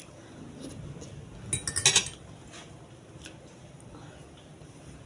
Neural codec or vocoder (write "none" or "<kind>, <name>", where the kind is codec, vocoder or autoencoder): none